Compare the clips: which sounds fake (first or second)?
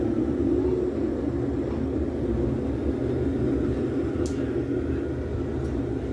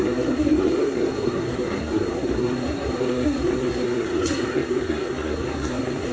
second